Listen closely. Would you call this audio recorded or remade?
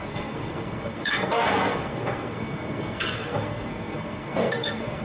remade